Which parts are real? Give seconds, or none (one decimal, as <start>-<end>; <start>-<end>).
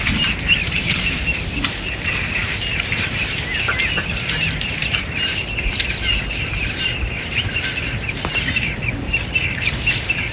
0.0-10.3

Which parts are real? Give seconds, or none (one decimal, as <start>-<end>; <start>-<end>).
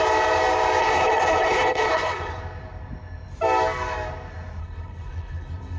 0.0-0.8; 2.4-4.6